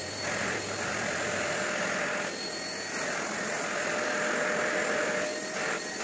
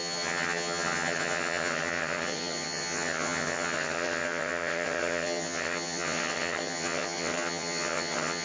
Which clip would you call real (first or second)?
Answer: first